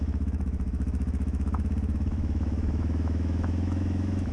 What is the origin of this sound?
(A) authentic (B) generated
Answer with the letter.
B